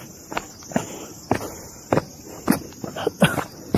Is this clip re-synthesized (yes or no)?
no